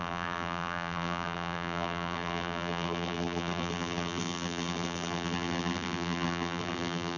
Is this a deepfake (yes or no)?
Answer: yes